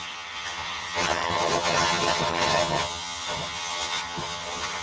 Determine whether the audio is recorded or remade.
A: remade